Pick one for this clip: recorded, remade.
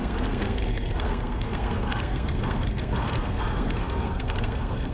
remade